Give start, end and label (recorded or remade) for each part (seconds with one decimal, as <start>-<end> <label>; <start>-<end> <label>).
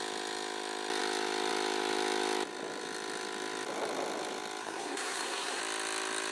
0.0-4.6 recorded; 4.6-5.6 remade; 5.6-6.3 recorded